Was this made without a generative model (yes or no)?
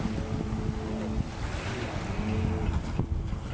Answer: yes